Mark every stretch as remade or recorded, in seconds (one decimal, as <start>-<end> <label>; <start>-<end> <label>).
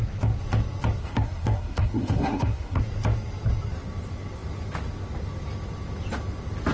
0.0-1.0 recorded; 1.0-2.8 remade; 2.8-6.7 recorded